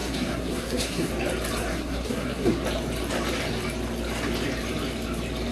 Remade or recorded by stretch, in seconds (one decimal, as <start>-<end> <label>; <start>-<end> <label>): 0.0-1.1 remade; 1.1-1.7 recorded; 1.7-2.6 remade; 2.6-5.5 recorded